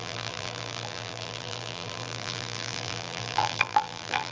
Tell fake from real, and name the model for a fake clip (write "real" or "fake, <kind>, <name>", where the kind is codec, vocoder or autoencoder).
fake, vocoder, BigVGAN v2